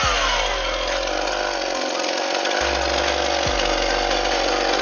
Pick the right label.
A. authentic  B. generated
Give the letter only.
A